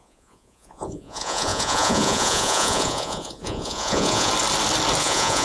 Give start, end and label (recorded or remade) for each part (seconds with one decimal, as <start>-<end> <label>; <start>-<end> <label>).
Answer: 0.0-4.3 remade; 4.3-5.0 recorded; 5.0-5.4 remade